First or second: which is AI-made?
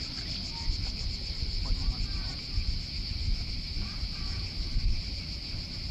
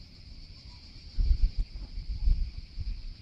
second